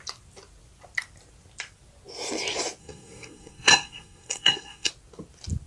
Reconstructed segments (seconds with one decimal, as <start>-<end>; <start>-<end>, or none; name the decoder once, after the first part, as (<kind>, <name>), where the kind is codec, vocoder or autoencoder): 2.8-4.9 (codec, SNAC)